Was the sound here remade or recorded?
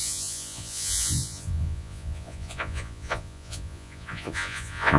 remade